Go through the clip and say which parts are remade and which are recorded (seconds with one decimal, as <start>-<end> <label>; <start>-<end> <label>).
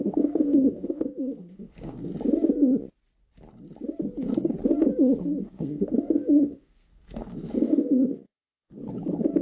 0.0-2.1 remade; 2.1-5.4 recorded; 5.4-8.8 remade; 8.8-9.4 recorded